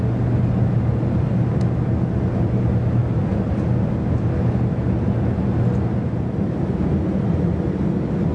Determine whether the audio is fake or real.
real